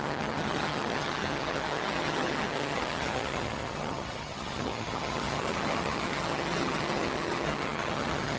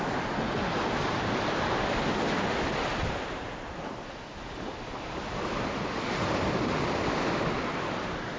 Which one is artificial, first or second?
first